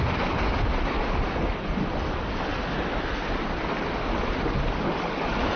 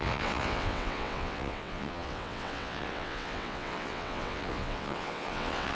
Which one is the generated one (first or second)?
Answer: second